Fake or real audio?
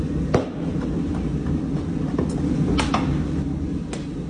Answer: real